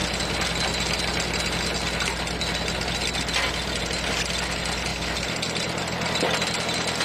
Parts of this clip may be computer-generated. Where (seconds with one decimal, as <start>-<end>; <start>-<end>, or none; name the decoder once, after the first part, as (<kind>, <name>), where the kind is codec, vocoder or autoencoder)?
none